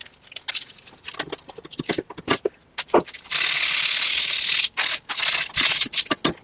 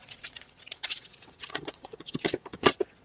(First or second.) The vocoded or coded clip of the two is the second